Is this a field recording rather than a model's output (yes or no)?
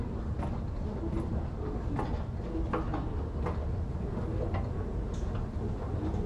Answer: yes